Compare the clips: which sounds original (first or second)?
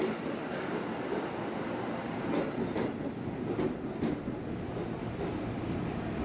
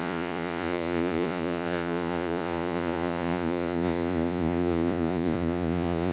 first